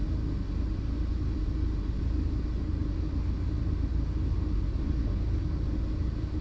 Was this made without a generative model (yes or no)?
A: yes